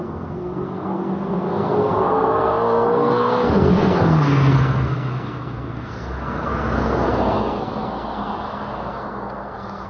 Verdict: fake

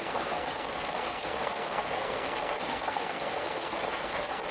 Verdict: fake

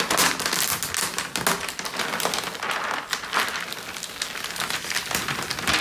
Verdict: real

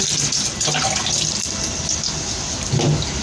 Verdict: real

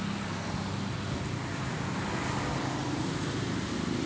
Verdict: real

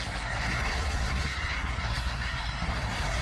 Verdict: fake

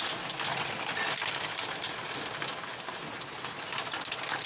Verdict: real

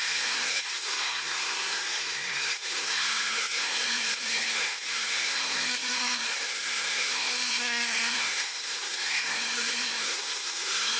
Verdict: fake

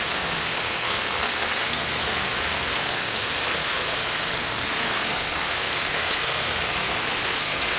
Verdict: fake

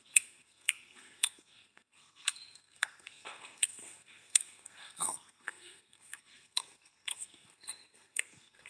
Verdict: fake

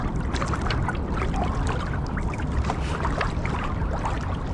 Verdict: real